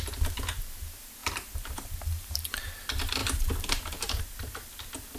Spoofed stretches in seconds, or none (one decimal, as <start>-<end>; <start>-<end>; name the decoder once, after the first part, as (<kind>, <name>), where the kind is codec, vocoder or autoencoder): 1.2-2.7 (vocoder, BigVGAN v2); 3.2-4.2